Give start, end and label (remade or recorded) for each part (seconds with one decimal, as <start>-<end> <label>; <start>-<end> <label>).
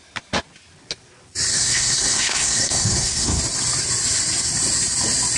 0.0-1.5 recorded; 1.5-3.4 remade; 3.4-5.4 recorded